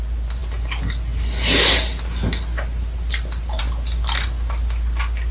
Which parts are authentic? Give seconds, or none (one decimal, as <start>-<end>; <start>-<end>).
0.0-5.3